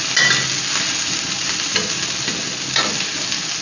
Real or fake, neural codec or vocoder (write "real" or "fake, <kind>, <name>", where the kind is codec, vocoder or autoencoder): real